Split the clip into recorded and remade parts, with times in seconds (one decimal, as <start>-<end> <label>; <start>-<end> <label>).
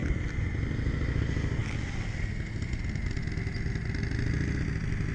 0.0-5.1 recorded